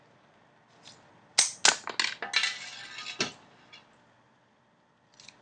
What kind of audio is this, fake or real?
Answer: real